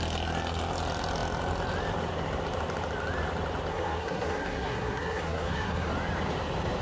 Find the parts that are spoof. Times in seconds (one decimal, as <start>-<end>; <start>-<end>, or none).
3.7-5.9